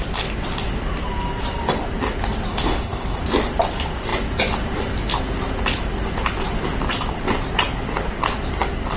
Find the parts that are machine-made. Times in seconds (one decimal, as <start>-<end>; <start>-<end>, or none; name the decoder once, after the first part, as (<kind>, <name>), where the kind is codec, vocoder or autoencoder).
2.5-3.2 (codec, HILCodec)